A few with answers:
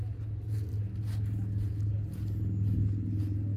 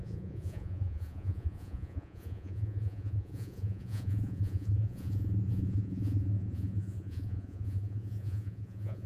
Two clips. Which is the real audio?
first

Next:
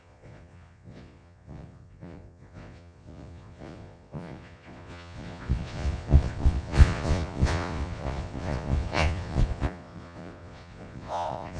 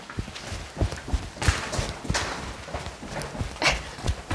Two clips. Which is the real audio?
second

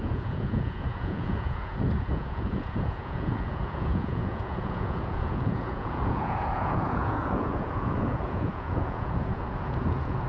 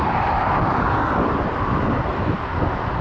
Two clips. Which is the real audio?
second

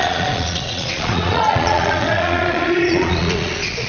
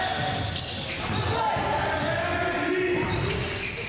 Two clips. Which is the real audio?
second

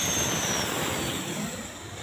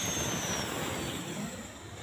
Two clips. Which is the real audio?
second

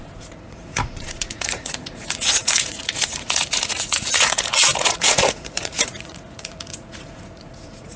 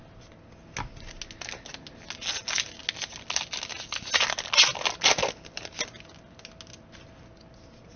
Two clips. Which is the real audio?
second